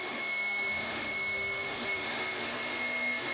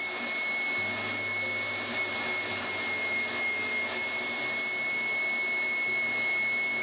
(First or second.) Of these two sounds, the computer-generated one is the first